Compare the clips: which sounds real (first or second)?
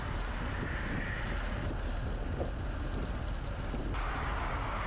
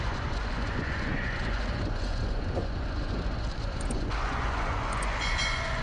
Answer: first